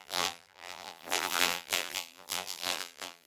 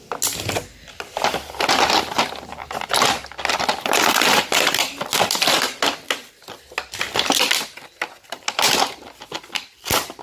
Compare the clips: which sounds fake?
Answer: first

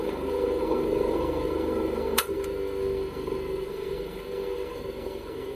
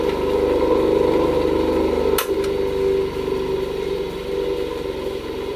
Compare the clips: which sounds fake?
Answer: first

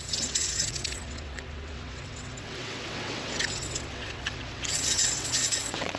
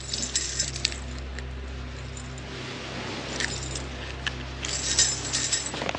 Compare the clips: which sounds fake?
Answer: first